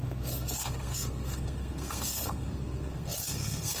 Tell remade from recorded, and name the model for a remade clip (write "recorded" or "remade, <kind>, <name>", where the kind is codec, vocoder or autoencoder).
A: remade, codec, SNAC